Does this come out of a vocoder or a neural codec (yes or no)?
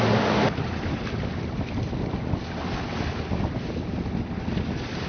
no